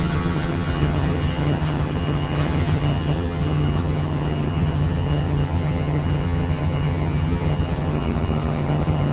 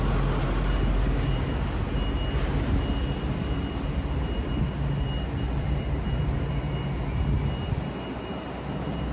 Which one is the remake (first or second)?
first